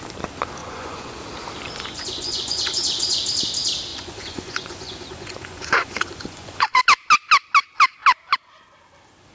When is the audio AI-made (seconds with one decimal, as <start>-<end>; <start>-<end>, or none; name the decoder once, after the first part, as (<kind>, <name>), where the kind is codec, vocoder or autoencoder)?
0.6-1.2 (vocoder, Vocos); 1.9-3.2; 3.9-6.8